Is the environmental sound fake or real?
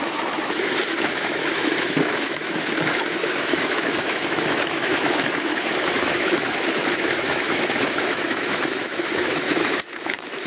fake